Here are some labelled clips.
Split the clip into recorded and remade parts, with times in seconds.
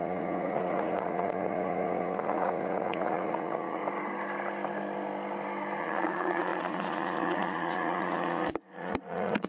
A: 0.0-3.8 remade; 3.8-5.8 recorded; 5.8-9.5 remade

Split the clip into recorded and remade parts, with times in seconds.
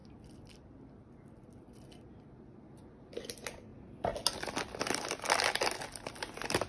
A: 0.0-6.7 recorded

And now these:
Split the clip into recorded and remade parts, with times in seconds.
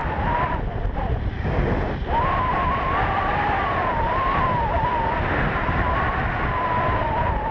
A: 0.0-7.5 recorded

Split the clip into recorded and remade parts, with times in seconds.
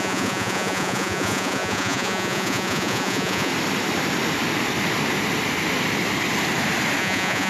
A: 0.0-3.5 remade; 3.5-7.0 recorded; 7.0-7.5 remade